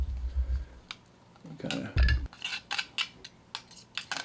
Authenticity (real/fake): real